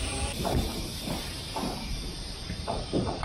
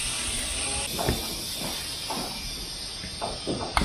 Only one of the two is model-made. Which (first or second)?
first